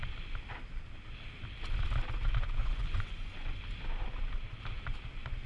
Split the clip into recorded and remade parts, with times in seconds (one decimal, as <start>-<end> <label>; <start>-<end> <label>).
0.0-2.6 recorded; 2.6-3.6 remade; 3.6-5.5 recorded